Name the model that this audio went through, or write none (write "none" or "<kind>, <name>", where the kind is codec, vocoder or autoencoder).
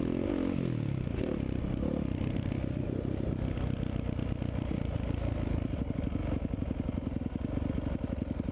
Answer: none